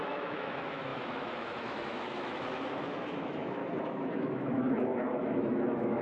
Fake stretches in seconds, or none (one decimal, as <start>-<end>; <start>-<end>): 0.0-3.6; 4.3-6.0